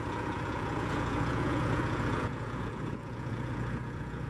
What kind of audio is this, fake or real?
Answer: fake